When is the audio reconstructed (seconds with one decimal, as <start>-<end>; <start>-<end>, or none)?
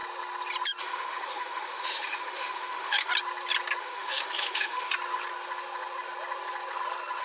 0.8-3.1; 3.8-4.9